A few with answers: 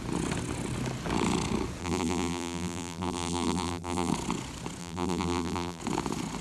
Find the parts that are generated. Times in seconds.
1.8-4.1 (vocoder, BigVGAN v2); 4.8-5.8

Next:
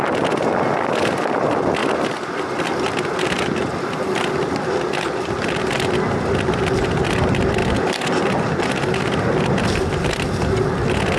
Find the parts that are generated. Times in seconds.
7.6-8.5 (vocoder, BigVGAN v2)

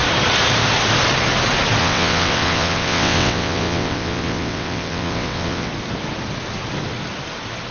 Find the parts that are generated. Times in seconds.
1.8-5.7 (vocoder, WaveNeXt)

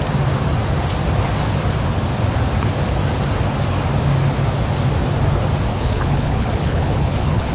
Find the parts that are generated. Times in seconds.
5.7-7.5 (codec, HILCodec)